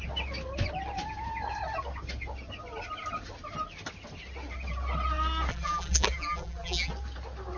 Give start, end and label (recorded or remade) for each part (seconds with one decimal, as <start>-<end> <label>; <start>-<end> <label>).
0.0-5.5 recorded; 5.5-6.9 remade; 6.9-7.6 recorded